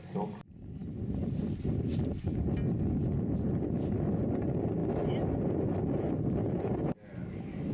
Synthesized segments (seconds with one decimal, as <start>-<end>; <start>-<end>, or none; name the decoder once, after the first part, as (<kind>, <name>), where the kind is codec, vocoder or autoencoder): none